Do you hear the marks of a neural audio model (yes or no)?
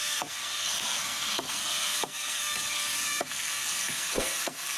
yes